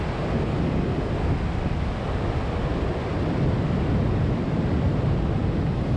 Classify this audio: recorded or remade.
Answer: recorded